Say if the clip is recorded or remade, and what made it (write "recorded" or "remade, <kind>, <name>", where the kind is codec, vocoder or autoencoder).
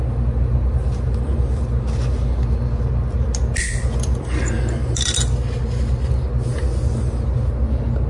recorded